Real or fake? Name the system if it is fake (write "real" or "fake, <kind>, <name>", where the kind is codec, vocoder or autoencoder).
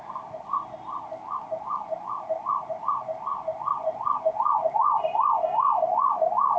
real